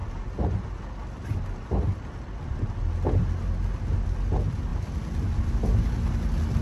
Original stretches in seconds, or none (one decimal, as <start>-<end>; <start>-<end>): 0.0-6.6